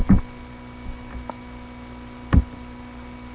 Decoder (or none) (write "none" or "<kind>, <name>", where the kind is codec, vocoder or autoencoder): none